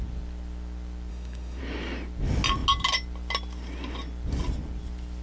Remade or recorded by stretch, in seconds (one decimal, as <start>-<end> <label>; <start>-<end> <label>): 0.0-1.1 recorded; 1.1-1.6 remade; 1.6-5.2 recorded